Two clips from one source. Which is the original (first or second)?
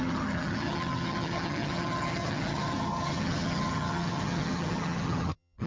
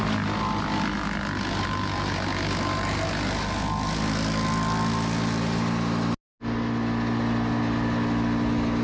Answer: second